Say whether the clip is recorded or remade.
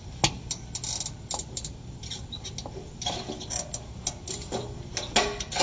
recorded